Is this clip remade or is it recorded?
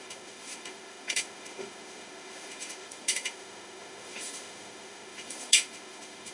remade